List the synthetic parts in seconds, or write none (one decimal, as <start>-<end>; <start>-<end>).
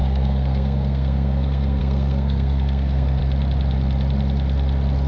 0.0-3.2